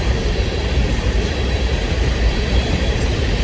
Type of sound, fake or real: fake